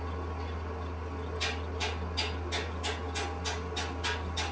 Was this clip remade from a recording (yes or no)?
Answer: no